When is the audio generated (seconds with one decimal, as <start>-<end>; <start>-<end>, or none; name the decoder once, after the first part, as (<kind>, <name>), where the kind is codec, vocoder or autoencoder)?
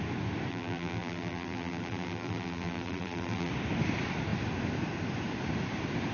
0.5-3.5 (vocoder, BigVGAN v2)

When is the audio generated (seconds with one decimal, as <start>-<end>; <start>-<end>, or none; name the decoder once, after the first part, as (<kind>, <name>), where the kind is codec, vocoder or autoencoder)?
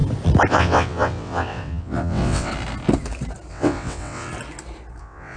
0.5-2.5 (vocoder, WaveNeXt); 3.5-4.3; 5.0-5.4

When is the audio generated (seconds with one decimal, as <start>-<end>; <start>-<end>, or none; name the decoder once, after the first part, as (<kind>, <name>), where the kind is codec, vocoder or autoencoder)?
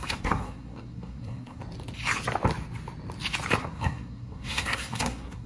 0.0-1.6 (codec, SNAC); 3.6-5.5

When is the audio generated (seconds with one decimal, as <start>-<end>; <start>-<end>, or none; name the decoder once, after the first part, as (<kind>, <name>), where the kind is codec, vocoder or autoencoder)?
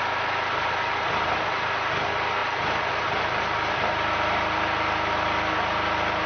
none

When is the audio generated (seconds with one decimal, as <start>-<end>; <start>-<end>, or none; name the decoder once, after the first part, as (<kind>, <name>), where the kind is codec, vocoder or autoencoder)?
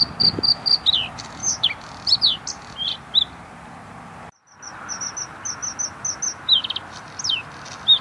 none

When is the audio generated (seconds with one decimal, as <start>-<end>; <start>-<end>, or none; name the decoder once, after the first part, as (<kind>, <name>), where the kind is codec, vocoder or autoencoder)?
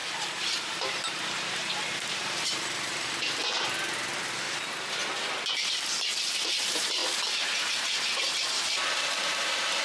0.0-3.4 (vocoder, BigVGAN v2); 6.6-7.0; 9.2-9.8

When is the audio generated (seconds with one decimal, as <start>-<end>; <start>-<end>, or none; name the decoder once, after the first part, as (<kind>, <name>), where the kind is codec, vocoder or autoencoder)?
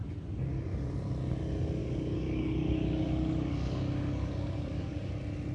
1.8-5.1 (codec, DAC)